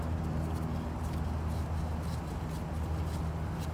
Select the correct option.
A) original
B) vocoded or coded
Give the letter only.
A